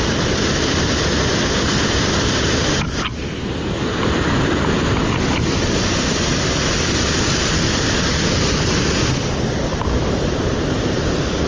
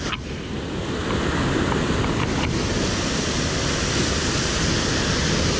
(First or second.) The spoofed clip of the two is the first